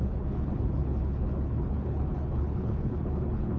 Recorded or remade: remade